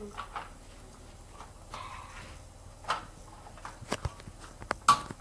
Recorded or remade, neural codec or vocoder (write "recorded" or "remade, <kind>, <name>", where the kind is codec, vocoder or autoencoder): recorded